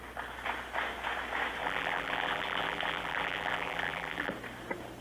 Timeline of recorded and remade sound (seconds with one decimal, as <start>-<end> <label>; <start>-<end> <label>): 0.0-1.6 recorded; 1.6-4.3 remade; 4.3-5.0 recorded